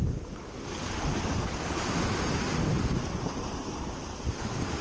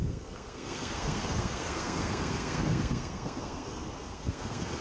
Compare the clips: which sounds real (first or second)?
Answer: first